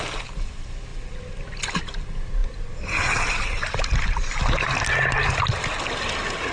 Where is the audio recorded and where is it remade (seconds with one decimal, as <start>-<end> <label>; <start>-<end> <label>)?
0.0-6.5 recorded

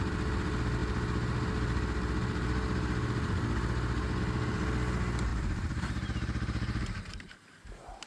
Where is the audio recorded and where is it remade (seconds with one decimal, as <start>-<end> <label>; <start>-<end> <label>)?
0.0-5.3 recorded; 5.3-8.1 remade

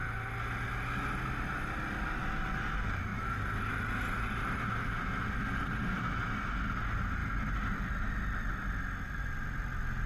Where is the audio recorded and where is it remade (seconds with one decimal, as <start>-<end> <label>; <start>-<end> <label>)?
0.0-10.1 recorded

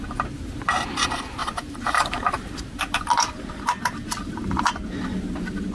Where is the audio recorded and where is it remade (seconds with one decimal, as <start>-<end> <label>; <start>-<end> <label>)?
0.0-1.4 recorded; 1.4-4.6 remade; 4.6-5.7 recorded

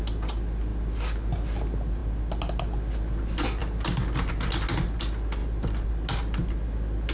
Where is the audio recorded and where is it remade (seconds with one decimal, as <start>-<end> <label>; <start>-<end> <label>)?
0.0-5.4 recorded; 5.4-5.9 remade; 5.9-7.1 recorded

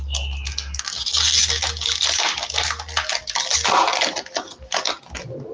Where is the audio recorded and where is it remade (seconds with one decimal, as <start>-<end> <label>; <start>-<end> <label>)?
0.0-5.5 recorded

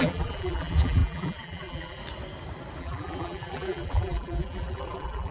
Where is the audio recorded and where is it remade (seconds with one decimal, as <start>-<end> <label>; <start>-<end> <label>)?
0.0-2.0 remade; 2.0-2.8 recorded; 2.8-5.3 remade

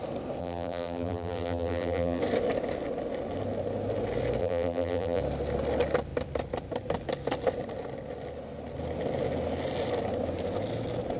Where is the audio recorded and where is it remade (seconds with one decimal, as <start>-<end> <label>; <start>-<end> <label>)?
0.0-0.4 recorded; 0.4-2.2 remade; 2.2-4.4 recorded; 4.4-5.2 remade; 5.2-11.2 recorded